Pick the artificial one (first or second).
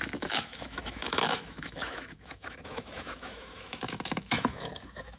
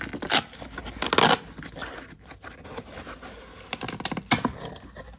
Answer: first